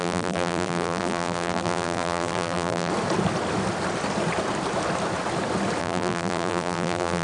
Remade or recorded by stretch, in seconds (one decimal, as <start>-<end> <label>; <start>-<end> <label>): 0.0-2.9 remade; 2.9-5.8 recorded; 5.8-7.2 remade

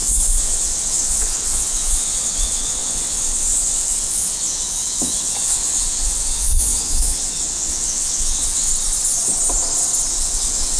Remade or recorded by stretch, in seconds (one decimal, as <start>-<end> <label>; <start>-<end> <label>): 0.0-8.7 remade; 8.7-10.1 recorded; 10.1-10.8 remade

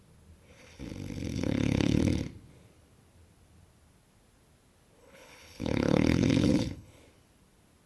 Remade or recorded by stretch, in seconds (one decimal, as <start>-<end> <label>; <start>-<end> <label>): 0.0-1.3 recorded; 1.3-2.0 remade; 2.0-5.0 recorded; 5.0-7.0 remade; 7.0-7.9 recorded

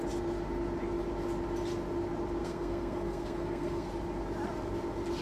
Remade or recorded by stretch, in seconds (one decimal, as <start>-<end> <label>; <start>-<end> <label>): 0.0-2.4 recorded; 2.4-3.9 remade; 3.9-5.2 recorded

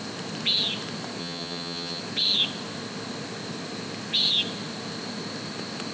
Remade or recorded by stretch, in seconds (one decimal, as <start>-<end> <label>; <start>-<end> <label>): 0.0-1.2 recorded; 1.2-2.0 remade; 2.0-5.9 recorded

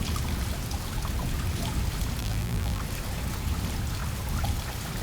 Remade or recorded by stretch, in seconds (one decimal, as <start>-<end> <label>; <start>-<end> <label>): 0.0-2.2 recorded; 2.2-2.8 remade; 2.8-5.0 recorded